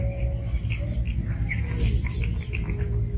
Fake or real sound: real